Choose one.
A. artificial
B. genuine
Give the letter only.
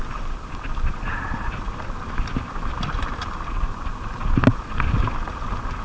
B